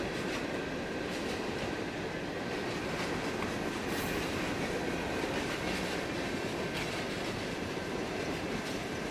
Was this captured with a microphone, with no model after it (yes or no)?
yes